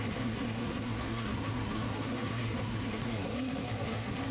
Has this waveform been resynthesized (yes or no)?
yes